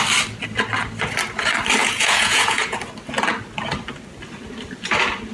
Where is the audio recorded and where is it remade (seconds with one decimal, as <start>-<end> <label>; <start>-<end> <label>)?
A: 0.0-1.8 recorded; 1.8-2.8 remade; 2.8-5.3 recorded